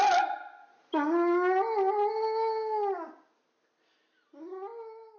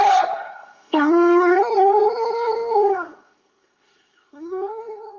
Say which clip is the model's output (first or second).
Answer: second